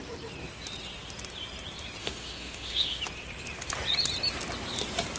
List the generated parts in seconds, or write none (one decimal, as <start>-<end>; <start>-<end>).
2.0-3.0